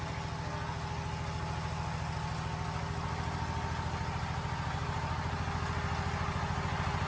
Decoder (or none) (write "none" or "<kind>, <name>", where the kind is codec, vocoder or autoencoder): none